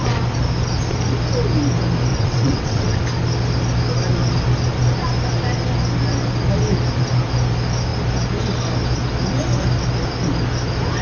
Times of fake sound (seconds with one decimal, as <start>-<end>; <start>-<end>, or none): 2.1-3.0